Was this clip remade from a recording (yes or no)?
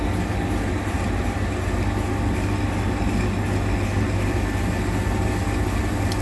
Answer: no